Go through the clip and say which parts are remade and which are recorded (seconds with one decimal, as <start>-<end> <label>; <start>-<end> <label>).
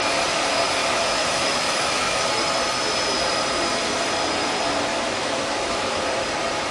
0.0-0.8 recorded; 0.8-2.3 remade; 2.3-4.9 recorded; 4.9-6.0 remade; 6.0-6.7 recorded